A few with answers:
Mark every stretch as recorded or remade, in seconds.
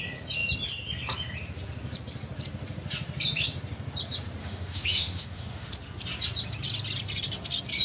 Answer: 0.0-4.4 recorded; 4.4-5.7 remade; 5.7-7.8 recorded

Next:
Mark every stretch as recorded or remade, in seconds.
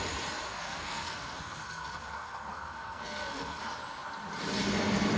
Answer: 0.0-0.5 recorded; 0.5-3.6 remade; 3.6-5.2 recorded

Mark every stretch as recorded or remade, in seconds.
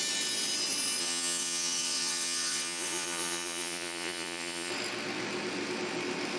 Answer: 0.0-1.0 recorded; 1.0-4.7 remade; 4.7-6.4 recorded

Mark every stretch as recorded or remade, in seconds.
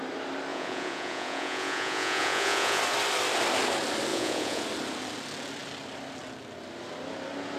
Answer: 0.0-0.5 recorded; 0.5-2.8 remade; 2.8-4.1 recorded; 4.1-4.6 remade; 4.6-7.6 recorded